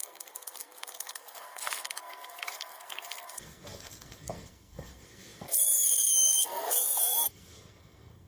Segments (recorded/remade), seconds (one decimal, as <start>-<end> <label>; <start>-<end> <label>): 0.0-8.3 remade